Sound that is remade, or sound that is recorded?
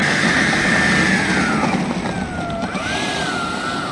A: recorded